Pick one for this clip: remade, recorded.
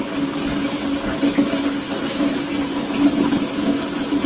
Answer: recorded